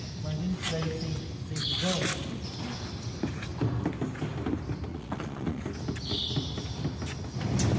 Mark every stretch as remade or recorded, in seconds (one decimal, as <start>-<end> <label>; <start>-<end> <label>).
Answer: 0.0-4.9 recorded; 4.9-5.6 remade; 5.6-7.8 recorded